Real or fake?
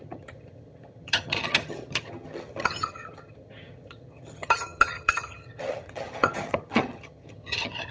fake